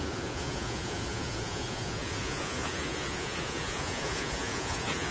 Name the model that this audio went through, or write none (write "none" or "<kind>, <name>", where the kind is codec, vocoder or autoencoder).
vocoder, Vocos